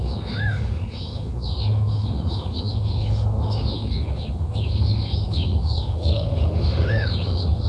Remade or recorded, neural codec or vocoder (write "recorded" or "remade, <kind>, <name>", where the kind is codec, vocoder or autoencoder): remade, autoencoder, DAC-VAE